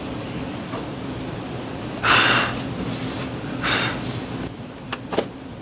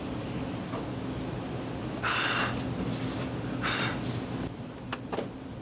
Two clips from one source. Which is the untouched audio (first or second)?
second